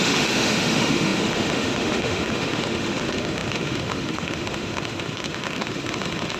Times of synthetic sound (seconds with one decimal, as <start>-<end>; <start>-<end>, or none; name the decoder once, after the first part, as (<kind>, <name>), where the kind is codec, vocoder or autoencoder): 0.0-6.4 (autoencoder, DAC-VAE)